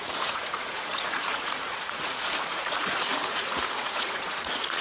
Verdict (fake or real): fake